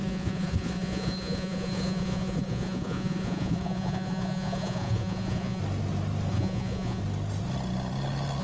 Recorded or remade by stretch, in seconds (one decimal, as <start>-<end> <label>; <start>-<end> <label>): 0.0-5.6 remade; 5.6-6.3 recorded; 6.3-7.0 remade; 7.0-8.4 recorded